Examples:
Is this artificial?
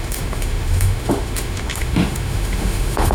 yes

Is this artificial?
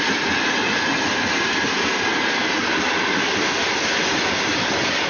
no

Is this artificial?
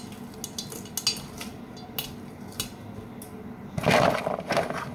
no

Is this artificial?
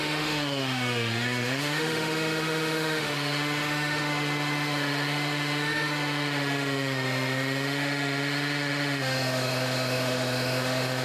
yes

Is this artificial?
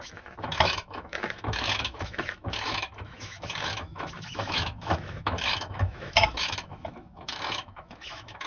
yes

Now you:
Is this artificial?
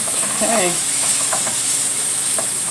yes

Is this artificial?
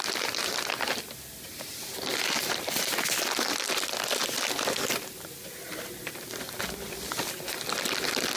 no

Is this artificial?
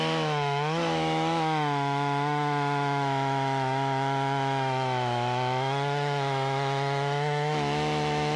yes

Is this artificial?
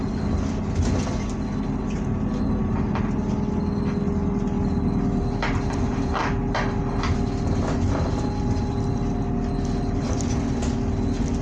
no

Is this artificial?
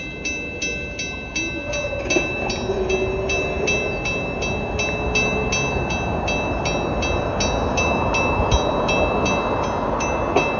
no